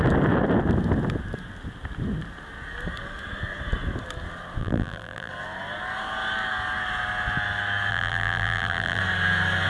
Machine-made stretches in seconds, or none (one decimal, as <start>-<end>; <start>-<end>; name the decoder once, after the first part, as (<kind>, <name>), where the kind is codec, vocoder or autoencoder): 4.6-5.3 (vocoder, BigVGAN v2); 7.9-9.0